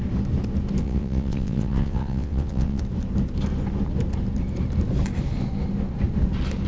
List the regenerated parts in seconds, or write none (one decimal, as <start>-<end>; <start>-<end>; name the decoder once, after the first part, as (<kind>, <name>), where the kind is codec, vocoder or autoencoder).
0.8-2.8 (vocoder, WaveNeXt)